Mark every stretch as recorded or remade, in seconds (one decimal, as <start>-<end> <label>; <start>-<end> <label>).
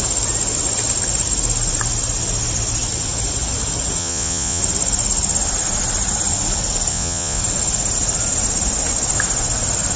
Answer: 0.0-4.0 recorded; 4.0-4.6 remade; 4.6-6.9 recorded; 6.9-7.4 remade; 7.4-10.0 recorded